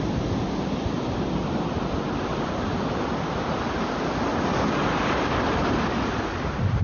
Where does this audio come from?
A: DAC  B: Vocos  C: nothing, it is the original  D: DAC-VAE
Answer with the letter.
C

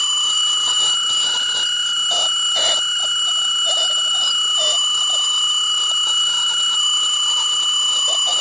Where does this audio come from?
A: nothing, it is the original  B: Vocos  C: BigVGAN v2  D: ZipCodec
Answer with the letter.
C